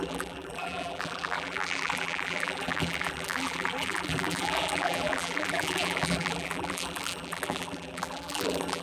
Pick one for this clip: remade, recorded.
remade